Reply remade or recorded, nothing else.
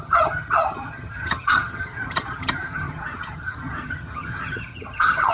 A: remade